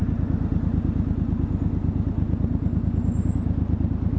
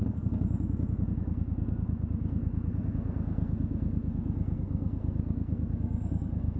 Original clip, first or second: first